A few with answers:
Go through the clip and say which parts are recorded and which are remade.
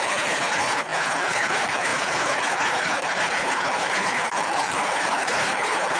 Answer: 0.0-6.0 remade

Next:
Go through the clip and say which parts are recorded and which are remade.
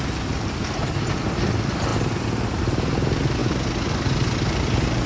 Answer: 0.0-5.1 recorded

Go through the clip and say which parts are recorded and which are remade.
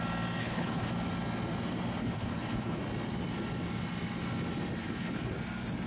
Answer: 0.0-0.4 recorded; 0.4-0.9 remade; 0.9-2.0 recorded; 2.0-2.8 remade; 2.8-4.8 recorded; 4.8-5.3 remade; 5.3-5.9 recorded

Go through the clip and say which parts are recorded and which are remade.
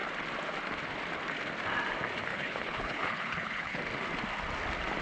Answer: 0.0-2.3 recorded; 2.3-3.8 remade; 3.8-5.0 recorded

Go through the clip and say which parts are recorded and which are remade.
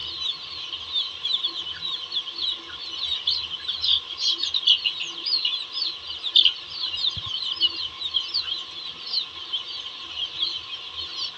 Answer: 0.0-11.4 recorded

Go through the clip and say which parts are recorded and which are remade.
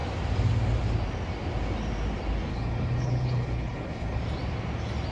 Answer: 0.0-2.5 recorded; 2.5-4.2 remade; 4.2-5.1 recorded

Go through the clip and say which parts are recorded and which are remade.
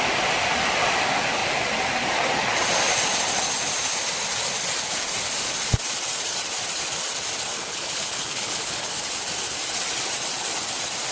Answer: 0.0-7.5 recorded; 7.5-8.9 remade; 8.9-11.1 recorded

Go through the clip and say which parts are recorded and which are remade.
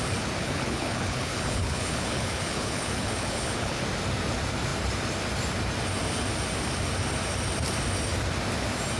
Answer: 0.0-0.4 recorded; 0.4-3.8 remade; 3.8-9.0 recorded